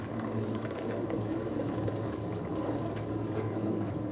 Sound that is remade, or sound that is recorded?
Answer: remade